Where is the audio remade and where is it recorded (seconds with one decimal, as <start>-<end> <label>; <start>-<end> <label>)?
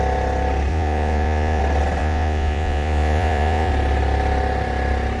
0.0-0.7 recorded; 0.7-1.6 remade; 1.6-2.0 recorded; 2.0-3.7 remade; 3.7-5.2 recorded